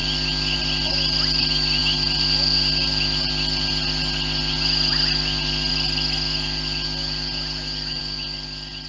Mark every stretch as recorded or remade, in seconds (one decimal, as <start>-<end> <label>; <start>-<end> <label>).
0.0-8.9 recorded